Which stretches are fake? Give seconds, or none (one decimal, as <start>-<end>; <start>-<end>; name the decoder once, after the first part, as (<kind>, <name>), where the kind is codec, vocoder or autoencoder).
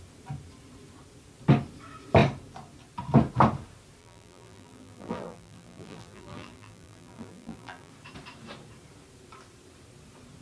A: 4.0-7.9 (vocoder, BigVGAN v2)